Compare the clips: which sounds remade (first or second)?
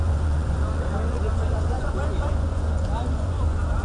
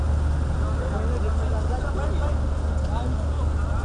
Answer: first